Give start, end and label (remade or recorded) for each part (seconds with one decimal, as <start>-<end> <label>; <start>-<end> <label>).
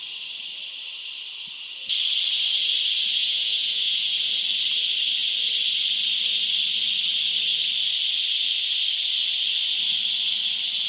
0.0-3.2 recorded; 3.2-4.1 remade; 4.1-10.9 recorded